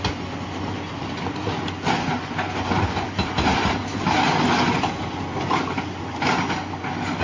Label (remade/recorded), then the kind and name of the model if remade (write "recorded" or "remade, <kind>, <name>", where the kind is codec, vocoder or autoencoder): recorded